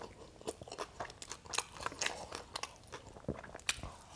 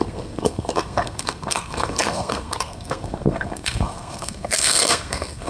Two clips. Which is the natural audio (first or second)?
first